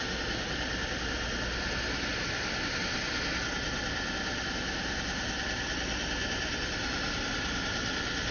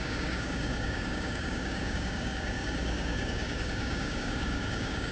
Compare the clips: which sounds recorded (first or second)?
first